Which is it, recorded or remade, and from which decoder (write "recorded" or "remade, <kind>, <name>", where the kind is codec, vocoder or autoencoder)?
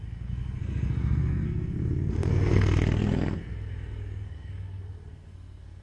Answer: remade, codec, SNAC